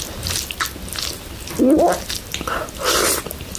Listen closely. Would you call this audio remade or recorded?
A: recorded